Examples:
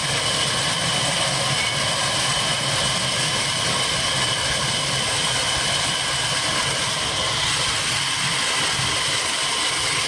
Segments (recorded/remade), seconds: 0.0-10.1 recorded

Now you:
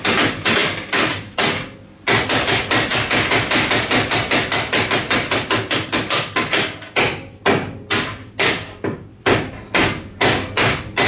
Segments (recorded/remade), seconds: 0.0-11.1 recorded

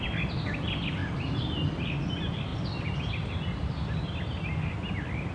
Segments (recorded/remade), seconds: 0.0-5.3 recorded

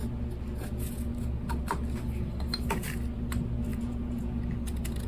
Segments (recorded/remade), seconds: 0.0-3.7 recorded; 3.7-4.4 remade; 4.4-5.1 recorded

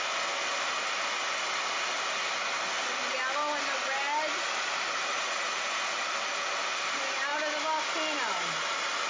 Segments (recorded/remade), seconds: 0.0-9.1 recorded